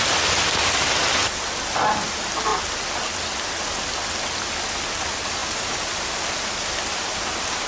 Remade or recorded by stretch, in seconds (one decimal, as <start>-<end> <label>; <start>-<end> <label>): 0.0-7.7 recorded